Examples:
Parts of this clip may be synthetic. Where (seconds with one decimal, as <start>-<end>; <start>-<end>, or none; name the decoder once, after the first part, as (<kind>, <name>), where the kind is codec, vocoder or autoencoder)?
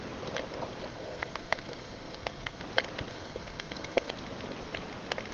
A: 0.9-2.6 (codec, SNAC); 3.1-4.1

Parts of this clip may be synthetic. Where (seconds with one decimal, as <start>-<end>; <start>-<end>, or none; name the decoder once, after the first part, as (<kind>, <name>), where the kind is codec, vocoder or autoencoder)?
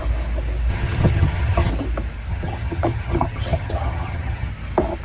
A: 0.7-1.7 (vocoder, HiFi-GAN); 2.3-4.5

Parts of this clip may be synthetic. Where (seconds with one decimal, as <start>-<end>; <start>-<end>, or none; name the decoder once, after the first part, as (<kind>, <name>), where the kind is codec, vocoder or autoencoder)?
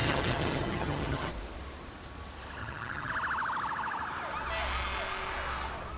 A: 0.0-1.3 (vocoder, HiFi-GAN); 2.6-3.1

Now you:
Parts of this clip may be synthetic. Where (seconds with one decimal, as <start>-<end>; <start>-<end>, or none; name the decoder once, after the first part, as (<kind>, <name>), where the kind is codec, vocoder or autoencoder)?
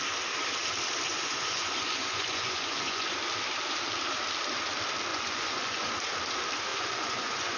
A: 1.1-3.1 (vocoder, Vocos); 5.1-5.9; 6.7-7.6